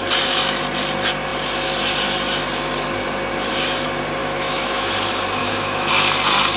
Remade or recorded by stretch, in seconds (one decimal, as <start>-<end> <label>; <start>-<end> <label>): 0.0-4.2 recorded; 4.2-4.9 remade; 4.9-5.4 recorded; 5.4-5.9 remade; 5.9-6.6 recorded